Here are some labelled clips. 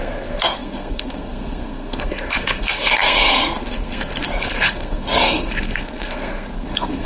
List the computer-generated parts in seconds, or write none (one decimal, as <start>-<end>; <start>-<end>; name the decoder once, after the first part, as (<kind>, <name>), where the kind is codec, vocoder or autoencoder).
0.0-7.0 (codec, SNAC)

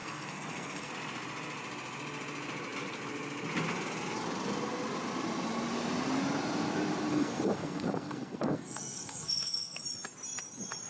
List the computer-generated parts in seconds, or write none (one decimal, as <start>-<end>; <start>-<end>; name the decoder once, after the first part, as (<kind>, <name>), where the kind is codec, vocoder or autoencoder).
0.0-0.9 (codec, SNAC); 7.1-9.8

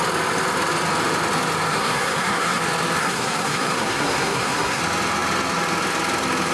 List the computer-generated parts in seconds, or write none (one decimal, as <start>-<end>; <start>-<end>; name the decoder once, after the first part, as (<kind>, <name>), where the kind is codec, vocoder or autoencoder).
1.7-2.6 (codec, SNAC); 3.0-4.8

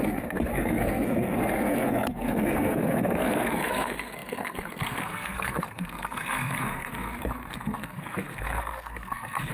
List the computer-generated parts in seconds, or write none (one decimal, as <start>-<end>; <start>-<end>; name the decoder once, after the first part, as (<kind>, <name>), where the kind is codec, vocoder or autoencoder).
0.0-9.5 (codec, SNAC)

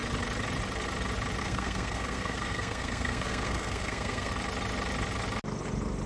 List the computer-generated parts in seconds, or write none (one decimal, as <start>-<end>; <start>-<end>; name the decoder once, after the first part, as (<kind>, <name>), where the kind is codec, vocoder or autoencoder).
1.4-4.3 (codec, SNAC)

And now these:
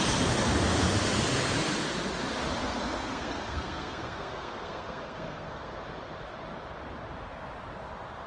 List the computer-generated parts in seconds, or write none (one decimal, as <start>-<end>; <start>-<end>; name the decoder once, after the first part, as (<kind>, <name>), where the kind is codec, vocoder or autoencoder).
2.6-5.8 (codec, SNAC)